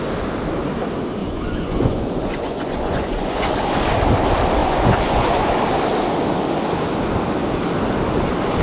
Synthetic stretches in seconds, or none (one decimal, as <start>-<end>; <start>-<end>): 1.2-3.5; 4.6-5.5